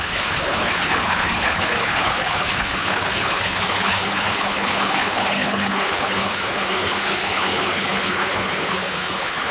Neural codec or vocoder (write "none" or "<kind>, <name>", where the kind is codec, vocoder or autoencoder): codec, HILCodec